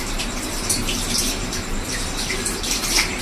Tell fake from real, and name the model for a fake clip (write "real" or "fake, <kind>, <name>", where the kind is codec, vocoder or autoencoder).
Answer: fake, vocoder, BigVGAN v2